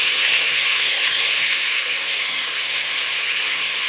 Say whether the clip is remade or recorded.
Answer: remade